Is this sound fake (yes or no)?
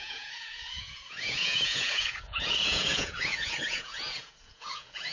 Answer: yes